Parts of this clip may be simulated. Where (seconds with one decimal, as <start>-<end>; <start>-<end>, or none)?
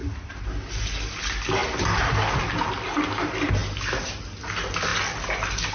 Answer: none